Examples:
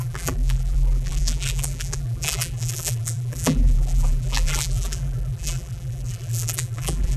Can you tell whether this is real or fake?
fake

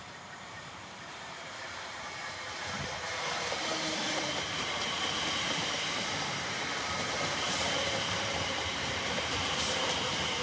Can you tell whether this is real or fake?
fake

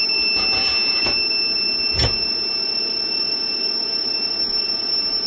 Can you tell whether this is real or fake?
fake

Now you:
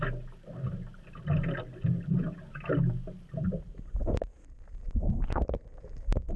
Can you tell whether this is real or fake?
real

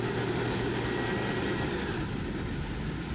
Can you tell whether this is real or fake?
real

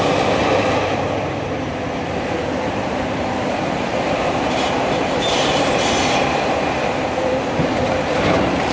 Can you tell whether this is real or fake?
fake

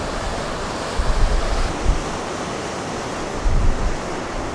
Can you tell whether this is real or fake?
real